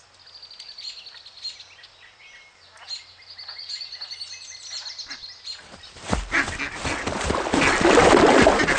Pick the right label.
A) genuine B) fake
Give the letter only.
A